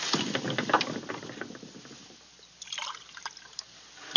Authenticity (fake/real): real